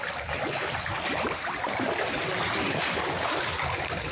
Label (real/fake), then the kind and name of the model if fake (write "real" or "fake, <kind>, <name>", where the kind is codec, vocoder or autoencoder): real